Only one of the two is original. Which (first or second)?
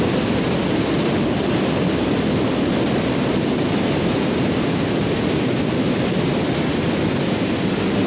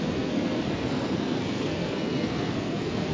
first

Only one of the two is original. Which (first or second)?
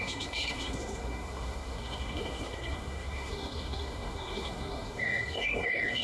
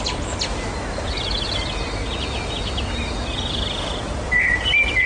second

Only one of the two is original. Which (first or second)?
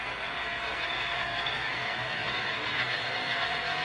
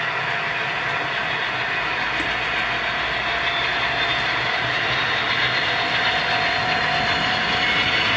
second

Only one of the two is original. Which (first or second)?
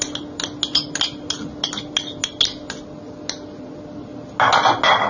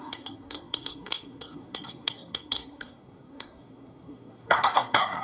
first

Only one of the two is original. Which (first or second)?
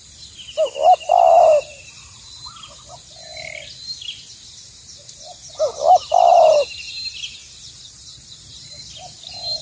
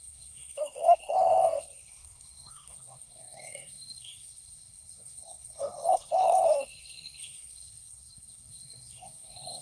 first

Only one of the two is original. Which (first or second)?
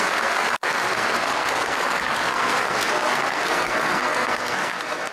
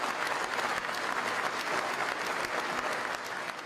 second